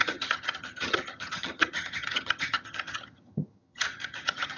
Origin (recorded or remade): remade